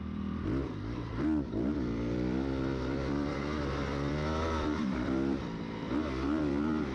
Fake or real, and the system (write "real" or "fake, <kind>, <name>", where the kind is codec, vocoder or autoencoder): fake, vocoder, BigVGAN v2